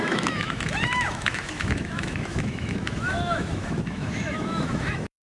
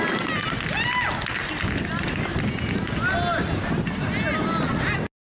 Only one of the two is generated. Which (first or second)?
first